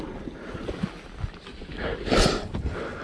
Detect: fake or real real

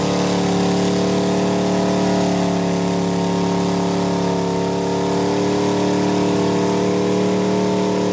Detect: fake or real real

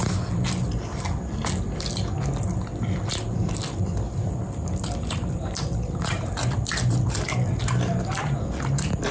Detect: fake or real fake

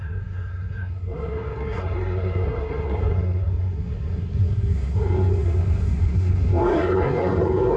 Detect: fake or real fake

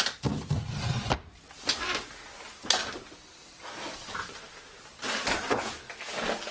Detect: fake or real real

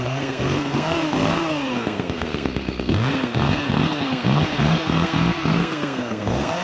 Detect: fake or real fake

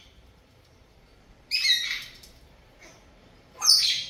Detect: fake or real fake